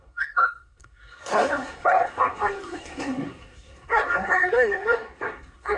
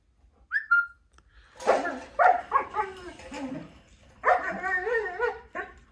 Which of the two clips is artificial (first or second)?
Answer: first